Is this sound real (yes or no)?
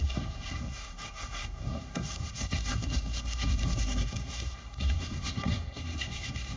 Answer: no